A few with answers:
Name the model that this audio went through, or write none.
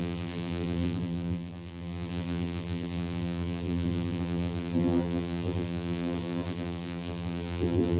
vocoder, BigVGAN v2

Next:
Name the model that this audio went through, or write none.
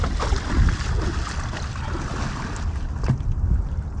none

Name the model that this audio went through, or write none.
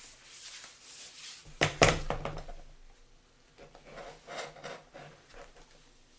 none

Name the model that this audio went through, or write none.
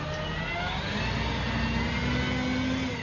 none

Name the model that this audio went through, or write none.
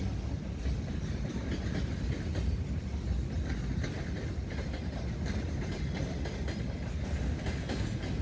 none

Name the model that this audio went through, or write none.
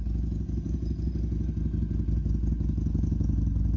none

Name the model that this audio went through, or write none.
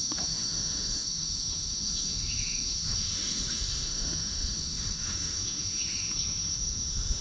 autoencoder, DAC-VAE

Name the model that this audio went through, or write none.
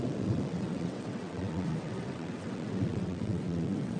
vocoder, WaveNeXt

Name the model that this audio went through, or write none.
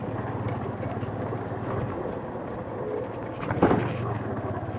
none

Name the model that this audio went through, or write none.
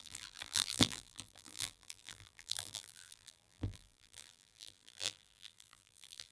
vocoder, BigVGAN v2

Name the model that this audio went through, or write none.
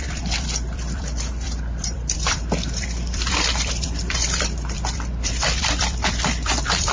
vocoder, BigVGAN v2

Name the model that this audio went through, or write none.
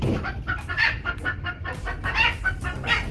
none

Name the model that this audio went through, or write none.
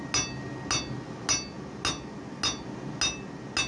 none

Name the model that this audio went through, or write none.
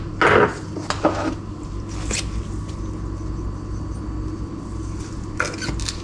none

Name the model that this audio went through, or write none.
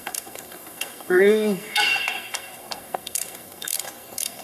codec, SNAC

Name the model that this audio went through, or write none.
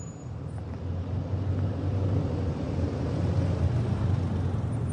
none